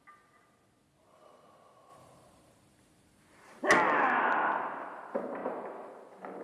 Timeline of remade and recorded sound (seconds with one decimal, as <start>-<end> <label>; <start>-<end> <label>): 0.0-1.9 recorded; 1.9-3.7 remade; 3.7-6.4 recorded